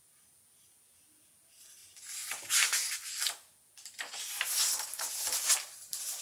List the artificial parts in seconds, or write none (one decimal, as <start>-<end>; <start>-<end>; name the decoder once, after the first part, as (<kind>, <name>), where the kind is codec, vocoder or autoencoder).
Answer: none